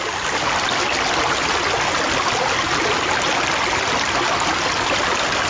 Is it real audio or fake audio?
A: real